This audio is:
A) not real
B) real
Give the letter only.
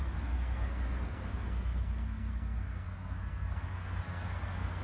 A